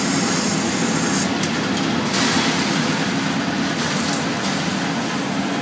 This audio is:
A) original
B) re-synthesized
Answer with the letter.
A